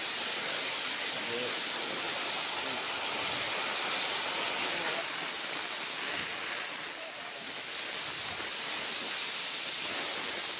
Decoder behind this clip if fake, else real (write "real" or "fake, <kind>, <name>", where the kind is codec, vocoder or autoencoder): real